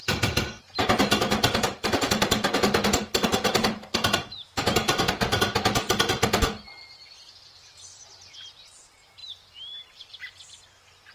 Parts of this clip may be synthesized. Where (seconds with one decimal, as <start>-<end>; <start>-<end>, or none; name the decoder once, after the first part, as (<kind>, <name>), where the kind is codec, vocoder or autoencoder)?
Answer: 0.0-2.1 (vocoder, BigVGAN v2); 9.2-10.6